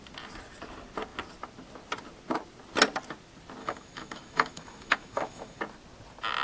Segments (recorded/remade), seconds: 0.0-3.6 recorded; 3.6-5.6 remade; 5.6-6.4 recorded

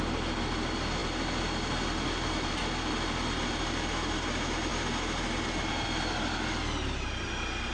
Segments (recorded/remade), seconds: 0.0-7.7 recorded